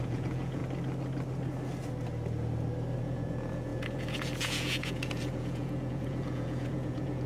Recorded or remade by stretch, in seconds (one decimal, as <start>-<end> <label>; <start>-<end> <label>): 0.0-0.6 remade; 0.6-3.0 recorded; 3.0-7.3 remade